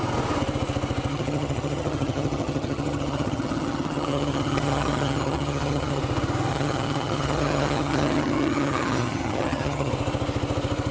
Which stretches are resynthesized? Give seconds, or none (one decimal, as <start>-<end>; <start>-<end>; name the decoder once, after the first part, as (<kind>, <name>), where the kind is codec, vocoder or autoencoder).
1.1-6.0 (vocoder, HiFi-GAN); 6.5-9.9